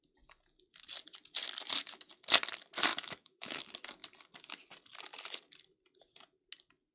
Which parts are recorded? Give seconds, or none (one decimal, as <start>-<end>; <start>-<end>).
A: 0.0-2.9; 3.6-6.9